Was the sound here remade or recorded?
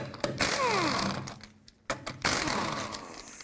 recorded